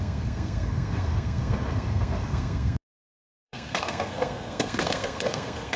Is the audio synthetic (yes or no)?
yes